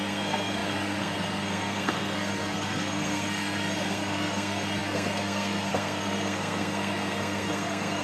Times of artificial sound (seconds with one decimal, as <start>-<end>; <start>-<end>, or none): 0.0-8.0